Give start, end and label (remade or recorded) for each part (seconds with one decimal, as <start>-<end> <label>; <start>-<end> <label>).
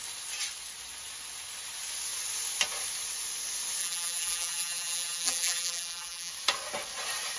0.0-3.8 recorded; 3.8-6.3 remade; 6.3-7.4 recorded